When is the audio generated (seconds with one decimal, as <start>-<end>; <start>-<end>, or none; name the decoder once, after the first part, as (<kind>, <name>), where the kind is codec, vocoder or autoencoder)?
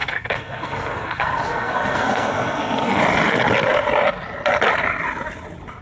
0.0-3.0 (codec, SNAC)